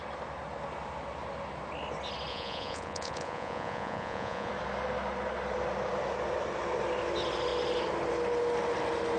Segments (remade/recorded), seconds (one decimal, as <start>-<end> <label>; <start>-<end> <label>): 0.0-2.3 recorded; 2.3-4.5 remade; 4.5-9.2 recorded